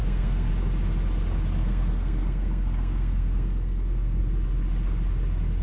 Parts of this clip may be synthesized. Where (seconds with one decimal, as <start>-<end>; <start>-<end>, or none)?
0.0-0.5; 1.6-4.2